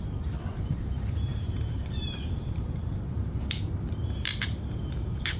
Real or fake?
fake